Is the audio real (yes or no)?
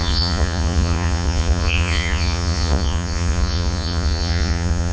no